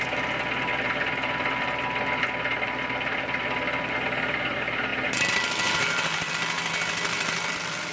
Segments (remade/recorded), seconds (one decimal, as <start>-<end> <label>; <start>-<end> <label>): 0.0-7.9 recorded